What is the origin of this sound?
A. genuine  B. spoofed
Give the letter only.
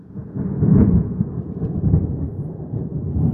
B